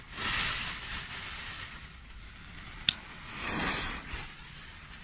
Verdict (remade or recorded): recorded